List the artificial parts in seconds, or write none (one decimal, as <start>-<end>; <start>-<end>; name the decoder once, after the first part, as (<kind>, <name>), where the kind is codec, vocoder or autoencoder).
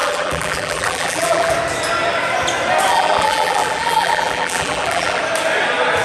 0.0-1.5 (vocoder, BigVGAN v2); 2.9-5.2